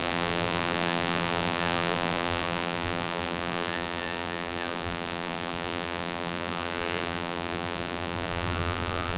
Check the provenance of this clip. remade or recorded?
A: remade